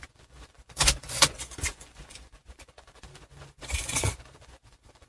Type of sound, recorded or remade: remade